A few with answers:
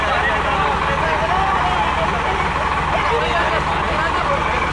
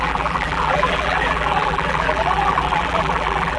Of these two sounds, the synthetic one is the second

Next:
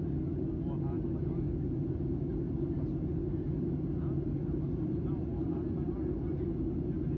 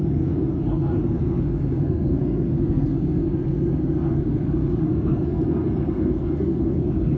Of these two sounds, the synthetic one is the second